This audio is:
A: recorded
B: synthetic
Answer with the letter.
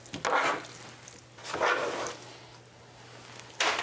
A